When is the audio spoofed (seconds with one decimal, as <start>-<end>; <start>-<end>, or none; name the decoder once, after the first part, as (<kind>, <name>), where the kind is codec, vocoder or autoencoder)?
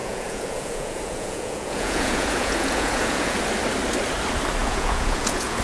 0.0-3.4 (vocoder, Vocos); 4.6-5.6